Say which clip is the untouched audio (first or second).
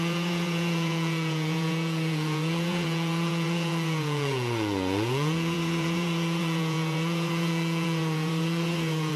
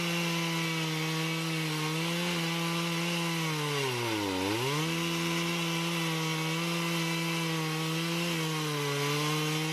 second